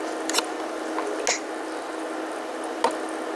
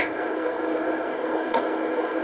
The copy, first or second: second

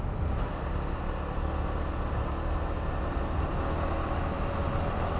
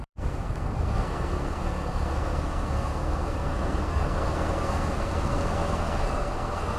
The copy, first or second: second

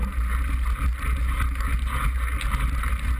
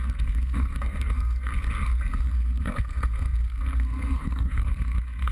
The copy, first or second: second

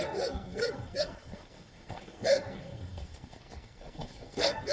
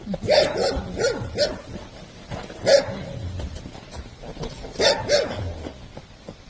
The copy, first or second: first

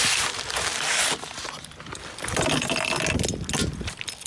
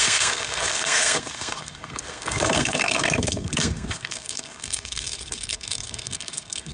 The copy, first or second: second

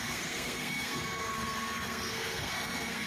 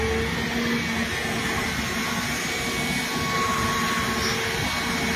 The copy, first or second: first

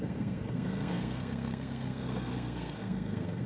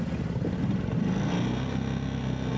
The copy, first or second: first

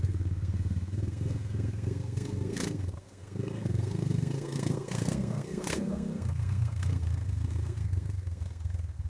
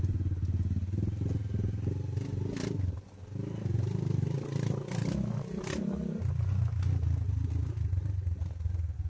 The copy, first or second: first